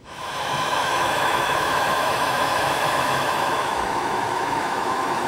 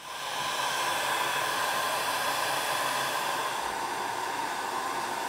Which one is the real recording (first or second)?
second